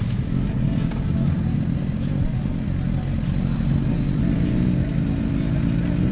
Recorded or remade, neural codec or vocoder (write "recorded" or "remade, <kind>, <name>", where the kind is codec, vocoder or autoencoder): recorded